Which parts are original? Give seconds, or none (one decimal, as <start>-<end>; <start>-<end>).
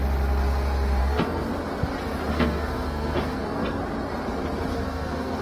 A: 0.0-1.0; 1.5-2.3; 3.8-4.7